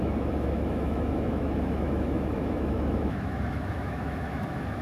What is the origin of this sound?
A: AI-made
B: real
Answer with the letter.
A